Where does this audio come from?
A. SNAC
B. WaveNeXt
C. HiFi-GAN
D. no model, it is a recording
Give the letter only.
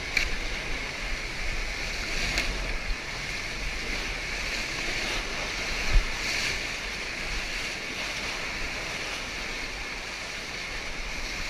D